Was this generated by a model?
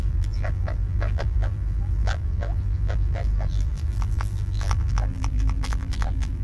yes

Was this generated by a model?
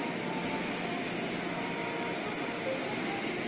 no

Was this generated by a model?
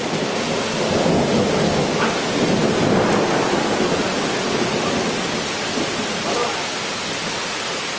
no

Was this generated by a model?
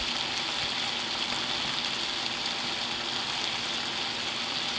no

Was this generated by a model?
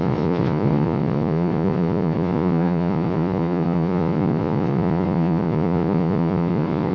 yes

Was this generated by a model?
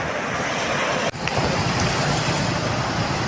no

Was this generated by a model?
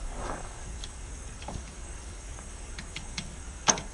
yes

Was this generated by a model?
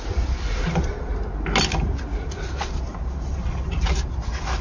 no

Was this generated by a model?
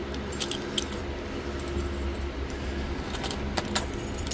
no